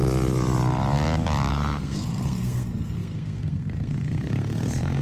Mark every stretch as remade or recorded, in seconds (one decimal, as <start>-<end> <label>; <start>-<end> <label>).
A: 0.0-1.5 recorded; 1.5-5.0 remade

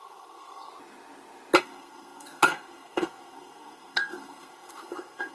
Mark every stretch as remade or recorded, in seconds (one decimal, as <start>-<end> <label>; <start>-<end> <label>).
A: 0.0-0.7 remade; 0.7-1.6 recorded; 1.6-5.3 remade

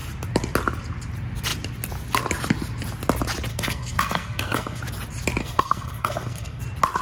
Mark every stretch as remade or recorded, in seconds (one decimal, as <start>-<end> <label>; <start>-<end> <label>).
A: 0.0-3.5 recorded; 3.5-4.8 remade; 4.8-5.4 recorded; 5.4-6.6 remade; 6.6-7.0 recorded

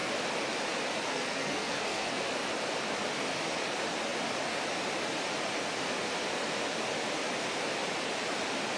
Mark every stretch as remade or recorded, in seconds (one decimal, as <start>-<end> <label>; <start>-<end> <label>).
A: 0.0-1.1 recorded; 1.1-2.2 remade; 2.2-8.8 recorded

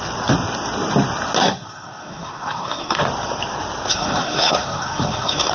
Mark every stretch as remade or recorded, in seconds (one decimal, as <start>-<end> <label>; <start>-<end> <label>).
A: 0.0-1.4 recorded; 1.4-3.0 remade; 3.0-3.9 recorded; 3.9-5.5 remade

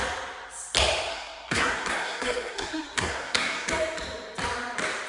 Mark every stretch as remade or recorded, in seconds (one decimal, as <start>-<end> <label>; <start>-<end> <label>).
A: 0.0-1.1 recorded; 1.1-3.7 remade; 3.7-5.1 recorded

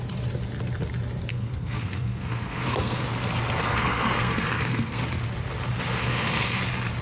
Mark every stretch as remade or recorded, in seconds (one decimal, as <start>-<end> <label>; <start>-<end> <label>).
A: 0.0-1.3 recorded; 1.3-3.0 remade; 3.0-3.6 recorded; 3.6-5.0 remade; 5.0-6.0 recorded; 6.0-6.6 remade; 6.6-7.0 recorded